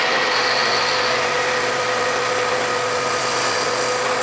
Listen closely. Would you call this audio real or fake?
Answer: real